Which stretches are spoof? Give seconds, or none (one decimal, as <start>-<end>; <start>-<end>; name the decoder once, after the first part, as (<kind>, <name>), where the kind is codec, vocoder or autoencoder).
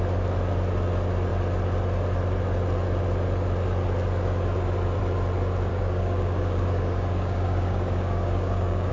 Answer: 5.7-8.9 (codec, DAC)